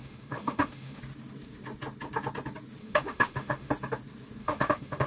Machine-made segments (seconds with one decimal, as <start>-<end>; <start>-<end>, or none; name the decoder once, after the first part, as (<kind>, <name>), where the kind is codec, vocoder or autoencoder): 0.0-1.0 (autoencoder, DAC-VAE); 2.8-3.7; 4.4-5.1